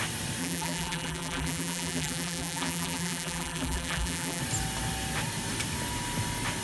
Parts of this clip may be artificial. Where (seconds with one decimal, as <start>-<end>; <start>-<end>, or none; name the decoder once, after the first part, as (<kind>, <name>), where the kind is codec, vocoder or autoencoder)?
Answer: 0.4-4.4 (vocoder, BigVGAN v2)